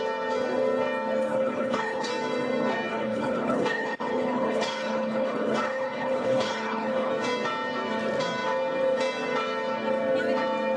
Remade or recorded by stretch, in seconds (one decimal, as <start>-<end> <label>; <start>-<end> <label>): 0.0-1.3 recorded; 1.3-2.1 remade; 2.1-2.9 recorded; 2.9-7.1 remade; 7.1-10.8 recorded